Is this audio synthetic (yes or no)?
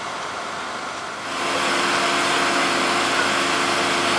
no